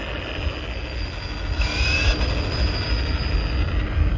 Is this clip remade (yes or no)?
no